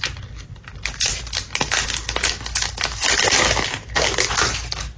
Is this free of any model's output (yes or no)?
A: yes